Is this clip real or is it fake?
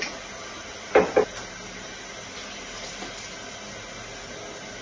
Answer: real